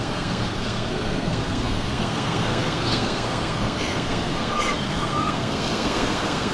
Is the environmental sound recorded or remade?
remade